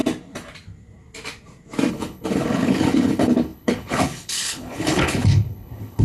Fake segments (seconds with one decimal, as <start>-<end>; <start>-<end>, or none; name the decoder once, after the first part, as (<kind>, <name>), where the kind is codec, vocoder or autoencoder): 1.9-6.0 (codec, HILCodec)